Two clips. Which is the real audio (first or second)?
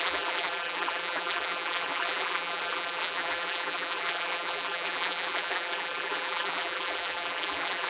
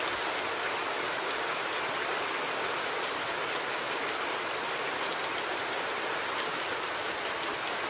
second